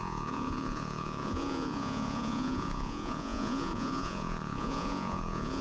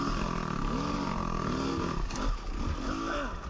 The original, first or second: second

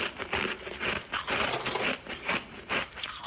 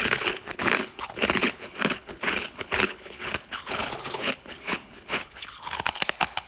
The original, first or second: first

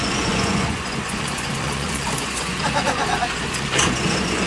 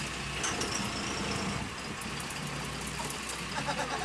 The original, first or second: second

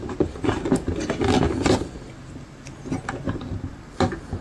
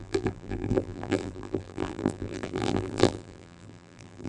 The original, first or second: first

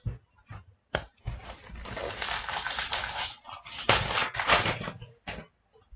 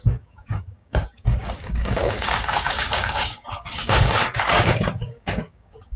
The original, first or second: first